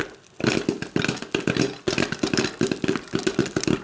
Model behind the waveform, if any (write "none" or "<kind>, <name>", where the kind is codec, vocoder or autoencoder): none